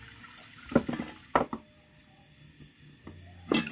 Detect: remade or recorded recorded